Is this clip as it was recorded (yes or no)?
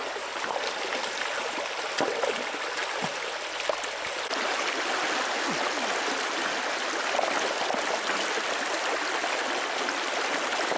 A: yes